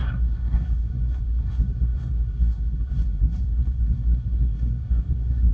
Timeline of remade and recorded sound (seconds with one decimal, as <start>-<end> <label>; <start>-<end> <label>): 0.0-5.5 remade